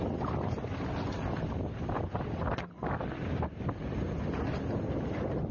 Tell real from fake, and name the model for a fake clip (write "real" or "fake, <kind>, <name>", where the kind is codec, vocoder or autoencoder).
real